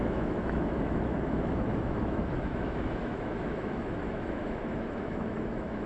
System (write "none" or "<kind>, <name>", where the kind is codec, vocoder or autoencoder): autoencoder, DAC-VAE